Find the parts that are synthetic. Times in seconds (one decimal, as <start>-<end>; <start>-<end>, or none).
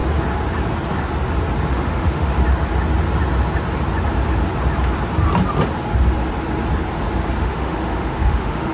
1.7-2.3; 7.4-8.7